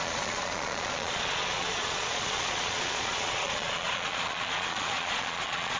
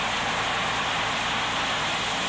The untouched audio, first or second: second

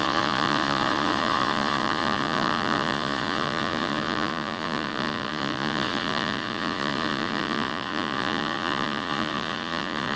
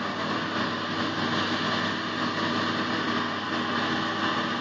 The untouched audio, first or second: second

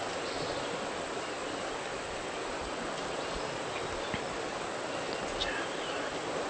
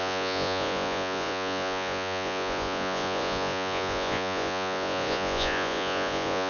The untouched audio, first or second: first